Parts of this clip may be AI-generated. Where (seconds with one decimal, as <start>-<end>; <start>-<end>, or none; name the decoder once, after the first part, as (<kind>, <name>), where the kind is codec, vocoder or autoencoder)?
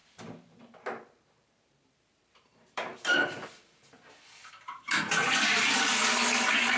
0.0-4.1 (vocoder, BigVGAN v2); 5.2-5.7